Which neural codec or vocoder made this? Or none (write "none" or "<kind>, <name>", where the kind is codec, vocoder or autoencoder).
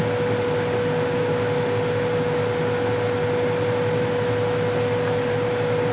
none